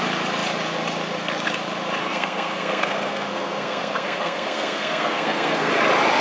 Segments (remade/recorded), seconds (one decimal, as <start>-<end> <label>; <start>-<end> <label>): 0.0-2.0 recorded; 2.0-5.7 remade; 5.7-6.2 recorded